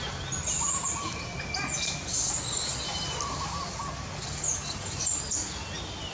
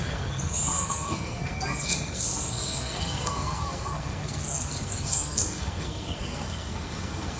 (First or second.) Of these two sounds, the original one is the first